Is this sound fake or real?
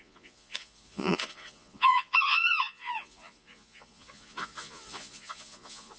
fake